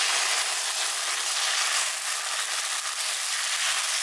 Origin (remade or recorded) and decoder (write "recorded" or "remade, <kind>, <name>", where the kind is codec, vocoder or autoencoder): recorded